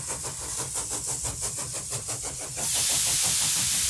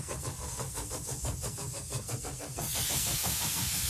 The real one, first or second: first